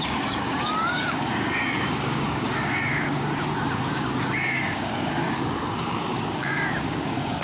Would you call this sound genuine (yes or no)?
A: no